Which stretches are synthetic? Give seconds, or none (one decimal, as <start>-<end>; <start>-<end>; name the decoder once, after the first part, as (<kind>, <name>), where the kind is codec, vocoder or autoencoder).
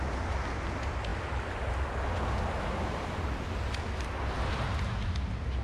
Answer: none